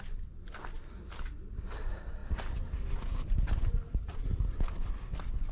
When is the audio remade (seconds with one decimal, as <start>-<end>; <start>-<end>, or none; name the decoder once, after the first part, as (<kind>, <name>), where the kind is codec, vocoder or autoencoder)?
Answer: none